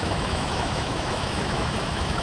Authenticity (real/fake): fake